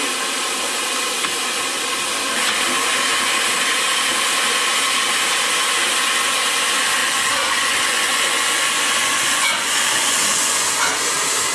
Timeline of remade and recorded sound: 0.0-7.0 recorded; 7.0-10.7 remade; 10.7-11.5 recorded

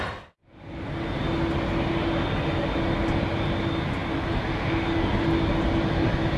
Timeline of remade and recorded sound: 0.0-6.4 recorded

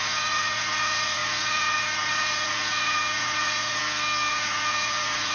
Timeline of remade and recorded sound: 0.0-3.8 remade; 3.8-4.3 recorded; 4.3-5.3 remade

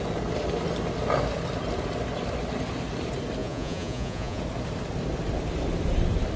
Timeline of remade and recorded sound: 0.0-3.4 recorded; 3.4-4.4 remade; 4.4-6.4 recorded

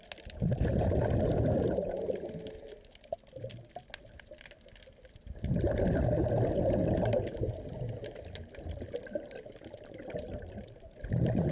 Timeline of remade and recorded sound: 0.0-11.5 recorded

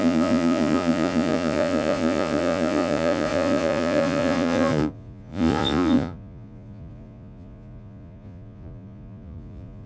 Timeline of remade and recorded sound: 0.0-9.9 remade